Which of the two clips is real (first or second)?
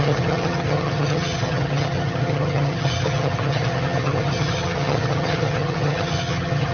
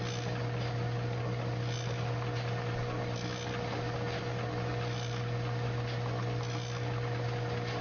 second